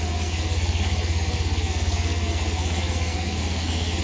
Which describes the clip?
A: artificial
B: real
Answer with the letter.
A